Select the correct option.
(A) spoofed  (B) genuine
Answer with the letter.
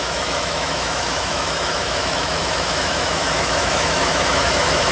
A